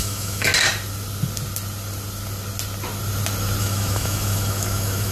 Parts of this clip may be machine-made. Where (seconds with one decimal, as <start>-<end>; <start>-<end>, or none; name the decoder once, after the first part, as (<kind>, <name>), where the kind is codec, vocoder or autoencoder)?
0.0-0.5 (autoencoder, DAC-VAE); 3.6-5.1